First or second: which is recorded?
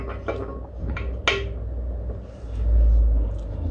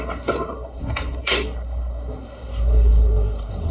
first